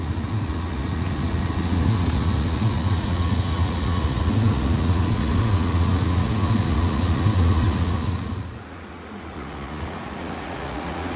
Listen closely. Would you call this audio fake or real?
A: fake